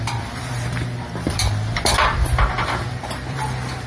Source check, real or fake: fake